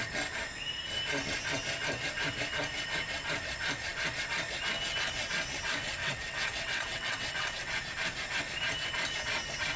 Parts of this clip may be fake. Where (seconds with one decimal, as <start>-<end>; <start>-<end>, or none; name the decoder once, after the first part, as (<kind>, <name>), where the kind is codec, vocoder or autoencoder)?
6.0-7.8 (vocoder, WaveNeXt)